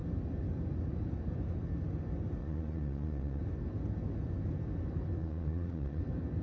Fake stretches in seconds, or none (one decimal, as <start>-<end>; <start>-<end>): 2.4-3.4; 5.2-6.0